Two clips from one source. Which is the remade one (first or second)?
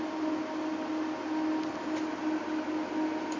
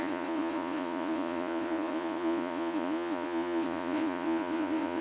second